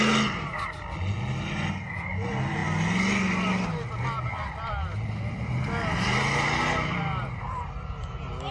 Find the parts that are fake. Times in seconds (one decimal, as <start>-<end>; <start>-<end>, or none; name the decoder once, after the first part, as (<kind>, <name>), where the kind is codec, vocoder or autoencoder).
none